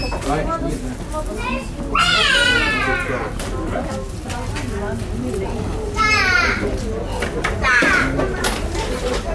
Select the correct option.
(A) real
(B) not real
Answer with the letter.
A